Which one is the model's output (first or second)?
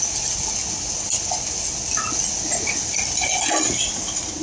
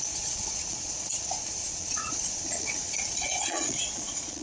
second